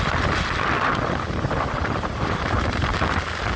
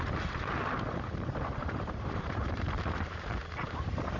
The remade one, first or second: second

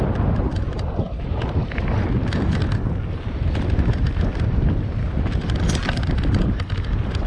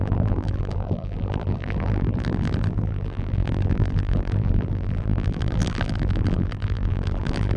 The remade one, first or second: second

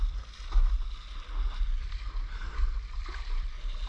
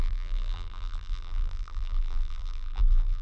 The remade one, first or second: second